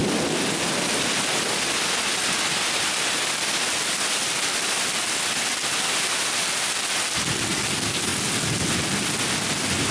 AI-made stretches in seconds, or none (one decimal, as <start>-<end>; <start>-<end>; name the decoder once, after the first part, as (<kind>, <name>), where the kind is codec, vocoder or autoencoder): none